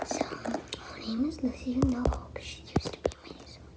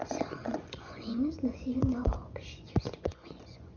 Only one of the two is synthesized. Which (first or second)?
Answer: second